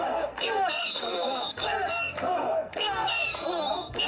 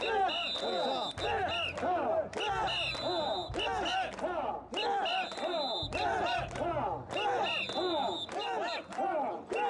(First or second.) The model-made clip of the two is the first